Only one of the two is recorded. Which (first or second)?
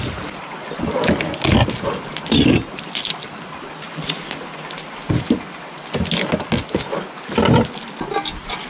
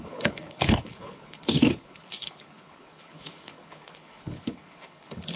first